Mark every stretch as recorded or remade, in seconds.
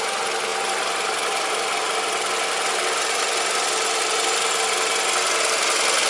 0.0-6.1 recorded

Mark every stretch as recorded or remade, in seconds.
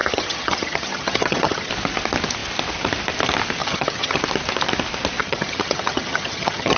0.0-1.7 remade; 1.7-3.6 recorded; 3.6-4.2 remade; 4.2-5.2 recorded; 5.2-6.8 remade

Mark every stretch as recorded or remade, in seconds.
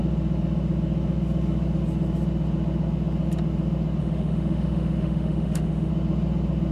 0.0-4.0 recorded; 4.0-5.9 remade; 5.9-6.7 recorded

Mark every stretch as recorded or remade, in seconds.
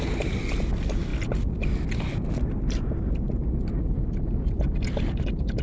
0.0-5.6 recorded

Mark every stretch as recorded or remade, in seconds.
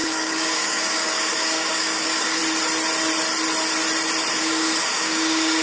0.0-2.4 remade; 2.4-4.4 recorded; 4.4-5.6 remade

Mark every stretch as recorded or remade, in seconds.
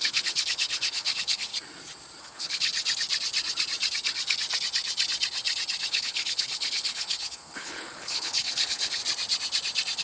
0.0-1.5 remade; 1.5-2.2 recorded; 2.2-2.7 remade; 2.7-5.9 recorded; 5.9-9.0 remade; 9.0-10.0 recorded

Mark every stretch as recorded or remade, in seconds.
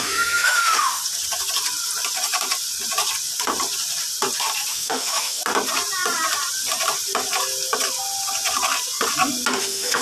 0.0-1.0 remade; 1.0-4.7 recorded; 4.7-5.4 remade; 5.4-9.6 recorded; 9.6-10.0 remade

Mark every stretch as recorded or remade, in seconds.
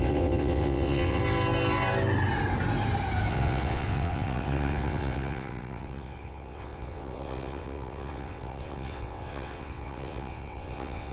0.0-1.2 remade; 1.2-3.3 recorded; 3.3-11.1 remade